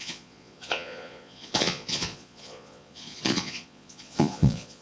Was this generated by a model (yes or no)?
yes